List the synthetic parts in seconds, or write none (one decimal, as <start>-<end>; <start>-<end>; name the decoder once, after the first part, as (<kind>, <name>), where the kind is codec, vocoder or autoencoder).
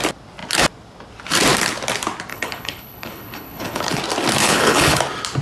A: 2.3-4.0 (codec, HILCodec); 4.4-5.0